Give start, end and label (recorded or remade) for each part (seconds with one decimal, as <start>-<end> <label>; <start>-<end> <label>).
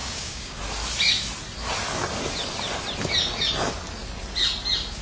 0.0-0.6 remade; 0.6-5.0 recorded